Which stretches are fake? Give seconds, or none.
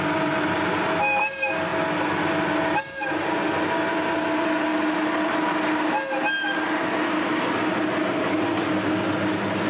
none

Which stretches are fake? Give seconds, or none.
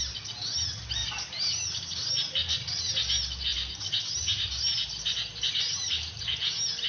1.0-2.8 (vocoder, BigVGAN v2); 3.5-4.6; 5.7-6.2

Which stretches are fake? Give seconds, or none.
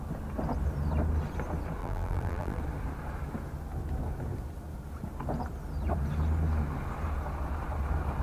1.8-2.6 (vocoder, BigVGAN v2)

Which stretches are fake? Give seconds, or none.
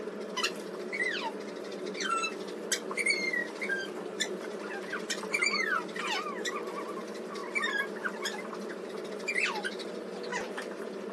3.4-6.0 (vocoder, BigVGAN v2); 7.4-8.9; 10.3-11.1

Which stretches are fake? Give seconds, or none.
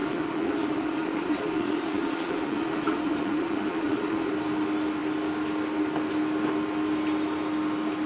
0.0-4.3 (vocoder, Vocos)